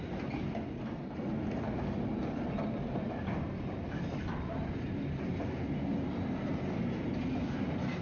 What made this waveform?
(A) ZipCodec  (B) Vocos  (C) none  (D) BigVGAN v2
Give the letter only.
C